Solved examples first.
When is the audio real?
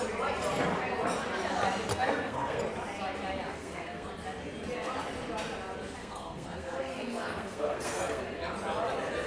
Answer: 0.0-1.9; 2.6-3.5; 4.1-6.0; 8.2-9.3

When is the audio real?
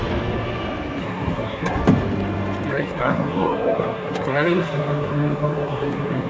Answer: 0.0-1.0; 1.8-2.7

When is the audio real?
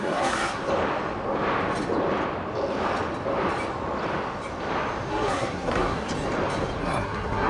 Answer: 0.6-5.1; 6.1-6.8